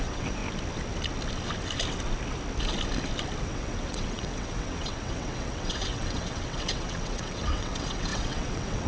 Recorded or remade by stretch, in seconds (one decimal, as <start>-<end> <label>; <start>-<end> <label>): 0.0-0.4 remade; 0.4-3.4 recorded; 3.4-8.9 remade

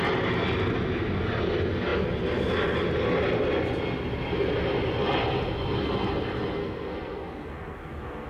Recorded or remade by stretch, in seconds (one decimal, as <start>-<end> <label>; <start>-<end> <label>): 0.0-6.6 recorded; 6.6-8.3 remade

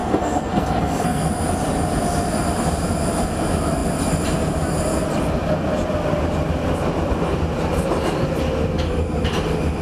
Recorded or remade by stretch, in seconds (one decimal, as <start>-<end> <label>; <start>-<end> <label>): 0.0-1.3 remade; 1.3-9.8 recorded